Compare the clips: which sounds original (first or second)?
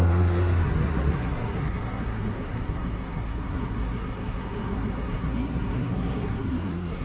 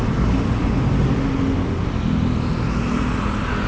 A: second